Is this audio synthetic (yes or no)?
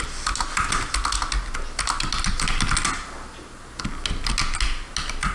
no